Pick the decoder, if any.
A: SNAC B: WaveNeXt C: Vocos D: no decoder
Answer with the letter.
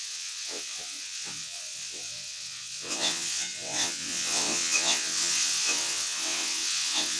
B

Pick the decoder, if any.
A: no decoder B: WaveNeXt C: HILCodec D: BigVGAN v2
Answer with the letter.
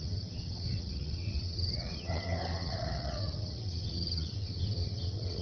B